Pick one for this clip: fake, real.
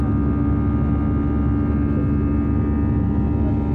real